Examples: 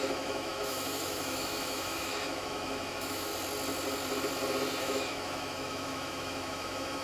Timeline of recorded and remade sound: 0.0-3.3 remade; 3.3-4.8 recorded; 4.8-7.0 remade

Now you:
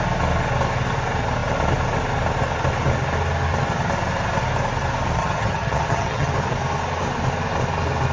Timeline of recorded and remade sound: 0.0-5.2 recorded; 5.2-6.3 remade; 6.3-8.1 recorded

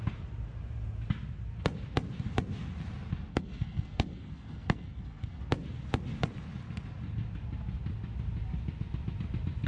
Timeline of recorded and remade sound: 0.0-3.3 recorded; 3.3-5.4 remade; 5.4-9.7 recorded

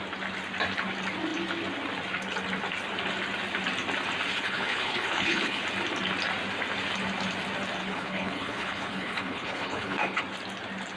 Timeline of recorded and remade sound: 0.0-4.3 recorded; 4.3-5.6 remade; 5.6-7.8 recorded; 7.8-10.2 remade; 10.2-11.0 recorded